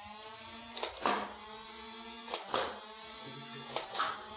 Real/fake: real